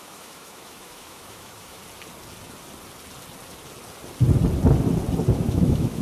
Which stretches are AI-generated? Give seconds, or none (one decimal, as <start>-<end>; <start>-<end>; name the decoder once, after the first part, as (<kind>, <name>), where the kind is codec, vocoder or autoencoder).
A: 0.0-1.8 (autoencoder, DAC-VAE); 5.3-6.0